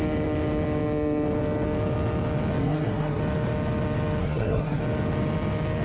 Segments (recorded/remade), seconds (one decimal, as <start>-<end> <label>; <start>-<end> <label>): 0.0-2.6 recorded; 2.6-3.2 remade; 3.2-4.2 recorded; 4.2-4.8 remade; 4.8-5.8 recorded